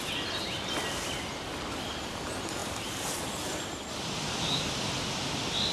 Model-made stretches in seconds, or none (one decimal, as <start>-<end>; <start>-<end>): none